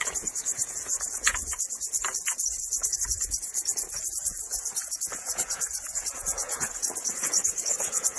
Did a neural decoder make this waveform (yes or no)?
yes